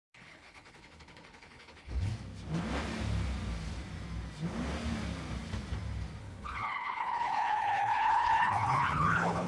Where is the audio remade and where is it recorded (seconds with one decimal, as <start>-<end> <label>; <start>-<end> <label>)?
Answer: 0.0-2.1 remade; 2.1-6.2 recorded; 6.2-9.5 remade